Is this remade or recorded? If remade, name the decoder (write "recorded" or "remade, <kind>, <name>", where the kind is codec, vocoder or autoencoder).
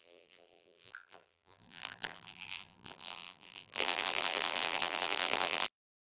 remade, vocoder, BigVGAN v2